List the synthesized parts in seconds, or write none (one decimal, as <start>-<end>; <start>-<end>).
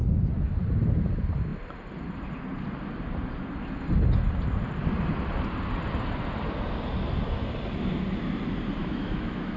8.8-9.6